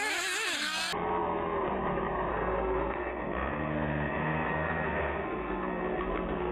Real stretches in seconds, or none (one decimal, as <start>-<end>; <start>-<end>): 0.0-2.3